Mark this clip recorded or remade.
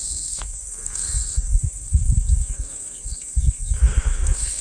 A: remade